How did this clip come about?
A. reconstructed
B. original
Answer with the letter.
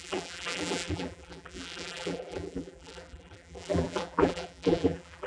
A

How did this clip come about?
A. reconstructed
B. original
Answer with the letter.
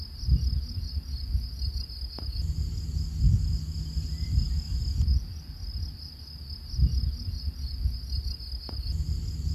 B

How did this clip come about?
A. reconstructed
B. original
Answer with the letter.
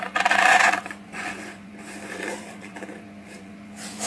A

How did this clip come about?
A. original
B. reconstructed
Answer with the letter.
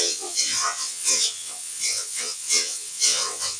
B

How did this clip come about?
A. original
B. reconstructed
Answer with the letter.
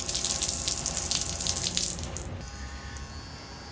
A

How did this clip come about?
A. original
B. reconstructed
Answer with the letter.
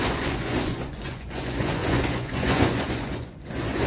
B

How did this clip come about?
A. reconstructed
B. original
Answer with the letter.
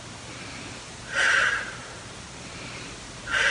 B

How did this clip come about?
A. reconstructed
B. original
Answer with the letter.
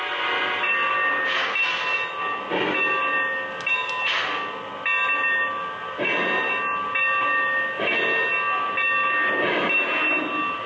B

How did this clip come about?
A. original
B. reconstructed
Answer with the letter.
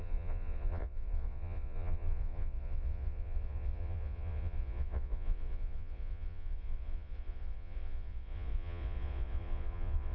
B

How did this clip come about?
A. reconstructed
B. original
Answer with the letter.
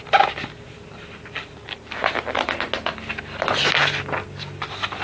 B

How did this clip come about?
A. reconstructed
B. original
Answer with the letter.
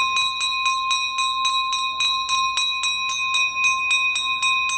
B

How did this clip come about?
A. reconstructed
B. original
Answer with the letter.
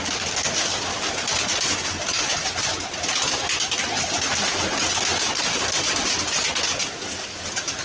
B